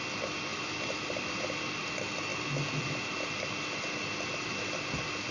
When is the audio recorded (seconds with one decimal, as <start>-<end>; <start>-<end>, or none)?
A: 0.0-0.5; 1.6-5.3